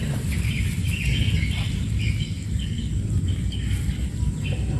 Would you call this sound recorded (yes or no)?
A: yes